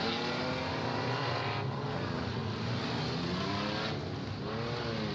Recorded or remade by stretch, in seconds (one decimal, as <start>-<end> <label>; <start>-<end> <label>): 0.0-5.1 recorded